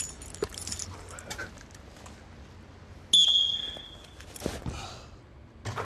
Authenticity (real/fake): real